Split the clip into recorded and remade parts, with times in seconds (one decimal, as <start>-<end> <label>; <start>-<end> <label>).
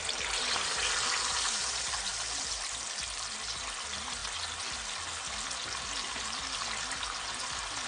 0.0-7.9 recorded